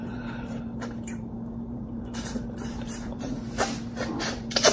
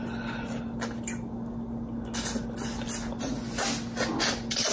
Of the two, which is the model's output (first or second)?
first